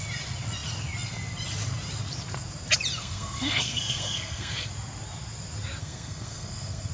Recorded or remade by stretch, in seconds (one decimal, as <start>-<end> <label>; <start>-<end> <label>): 0.0-3.0 recorded; 3.0-4.7 remade; 4.7-5.8 recorded; 5.8-6.9 remade